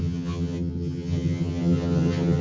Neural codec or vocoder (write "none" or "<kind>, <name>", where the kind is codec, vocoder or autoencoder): vocoder, HiFi-GAN